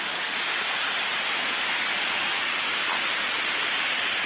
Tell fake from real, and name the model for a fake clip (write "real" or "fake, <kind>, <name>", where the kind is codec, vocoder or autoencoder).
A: real